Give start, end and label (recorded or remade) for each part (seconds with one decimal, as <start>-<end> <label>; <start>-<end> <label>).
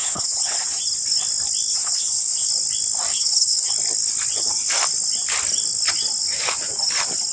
0.0-0.6 remade; 0.6-1.7 recorded; 1.7-2.5 remade; 2.5-3.1 recorded; 3.1-3.7 remade; 3.7-7.3 recorded